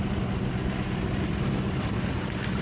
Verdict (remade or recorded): recorded